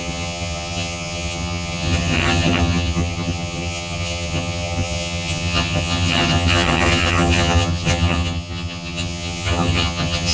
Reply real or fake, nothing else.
fake